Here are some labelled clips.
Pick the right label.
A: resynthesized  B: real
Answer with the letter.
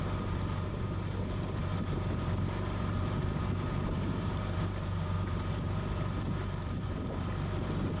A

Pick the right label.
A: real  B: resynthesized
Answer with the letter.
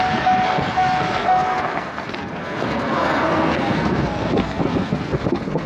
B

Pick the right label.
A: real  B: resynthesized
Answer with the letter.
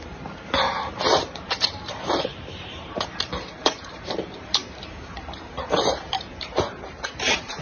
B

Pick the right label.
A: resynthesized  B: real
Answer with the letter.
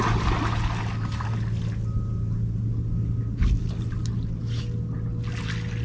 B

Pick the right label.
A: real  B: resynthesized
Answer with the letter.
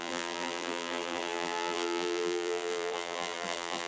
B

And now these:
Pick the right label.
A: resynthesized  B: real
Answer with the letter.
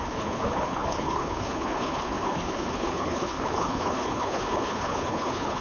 A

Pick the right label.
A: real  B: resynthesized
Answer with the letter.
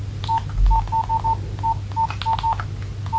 A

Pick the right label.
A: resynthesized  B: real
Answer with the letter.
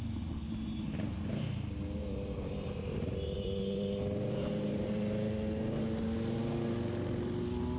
B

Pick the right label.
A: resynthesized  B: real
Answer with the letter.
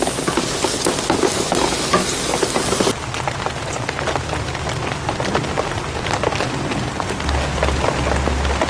B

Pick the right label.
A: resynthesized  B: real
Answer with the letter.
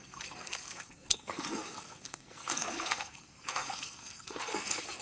A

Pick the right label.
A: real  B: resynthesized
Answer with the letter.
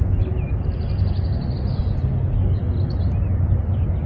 A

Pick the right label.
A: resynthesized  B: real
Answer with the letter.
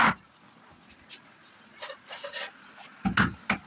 B